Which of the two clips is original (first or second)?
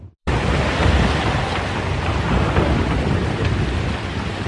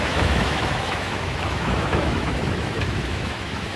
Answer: first